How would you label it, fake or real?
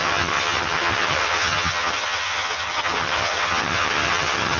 fake